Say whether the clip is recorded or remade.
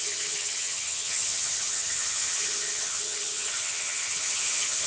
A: remade